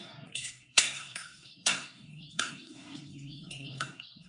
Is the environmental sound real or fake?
fake